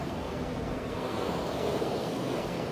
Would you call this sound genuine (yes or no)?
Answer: no